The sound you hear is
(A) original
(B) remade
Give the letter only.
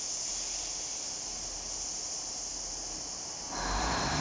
A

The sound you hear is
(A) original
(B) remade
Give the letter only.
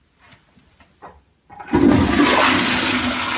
A